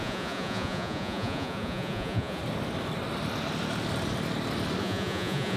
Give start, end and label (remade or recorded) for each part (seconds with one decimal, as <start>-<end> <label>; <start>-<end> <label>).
0.0-2.4 remade; 2.4-4.8 recorded; 4.8-5.6 remade